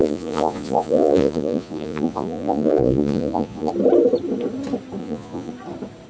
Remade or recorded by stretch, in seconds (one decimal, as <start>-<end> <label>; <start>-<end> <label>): 0.0-3.7 remade; 3.7-5.0 recorded; 5.0-5.5 remade; 5.5-6.1 recorded